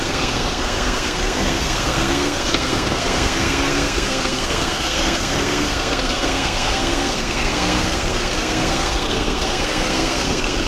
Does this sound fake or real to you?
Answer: fake